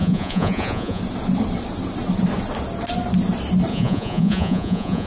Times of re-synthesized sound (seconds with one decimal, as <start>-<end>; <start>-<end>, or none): 0.0-1.0; 3.7-5.1